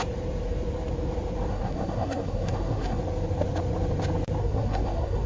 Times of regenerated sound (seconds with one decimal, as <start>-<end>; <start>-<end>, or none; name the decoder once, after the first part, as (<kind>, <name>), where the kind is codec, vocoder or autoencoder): 1.5-3.0 (codec, SNAC); 4.4-5.3

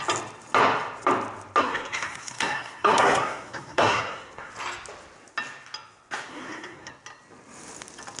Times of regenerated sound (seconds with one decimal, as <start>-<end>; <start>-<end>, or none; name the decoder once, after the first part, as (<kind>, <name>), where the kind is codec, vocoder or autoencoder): 1.6-4.5 (codec, SNAC); 6.3-6.9

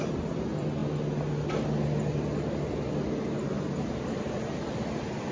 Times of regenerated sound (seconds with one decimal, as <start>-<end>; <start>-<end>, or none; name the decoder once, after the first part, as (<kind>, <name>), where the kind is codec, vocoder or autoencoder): none

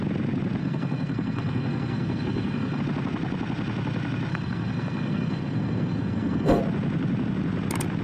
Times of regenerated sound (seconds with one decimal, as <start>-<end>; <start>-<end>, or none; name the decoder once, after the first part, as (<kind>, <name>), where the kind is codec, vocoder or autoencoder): 0.6-2.8 (codec, SNAC); 4.3-6.6

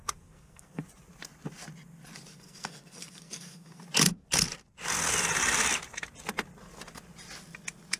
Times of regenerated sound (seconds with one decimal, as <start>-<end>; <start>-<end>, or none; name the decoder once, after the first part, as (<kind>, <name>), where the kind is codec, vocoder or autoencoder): 0.0-0.8 (codec, SNAC); 2.3-3.8